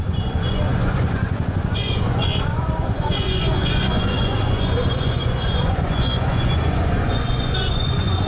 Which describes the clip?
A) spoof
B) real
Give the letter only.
A